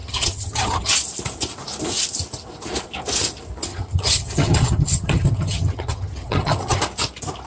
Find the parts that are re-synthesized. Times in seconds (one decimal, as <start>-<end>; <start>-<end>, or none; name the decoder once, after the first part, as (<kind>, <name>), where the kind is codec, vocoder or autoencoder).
0.0-0.9 (vocoder, HiFi-GAN); 3.7-6.8